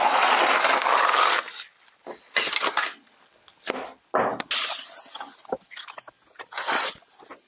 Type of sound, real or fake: real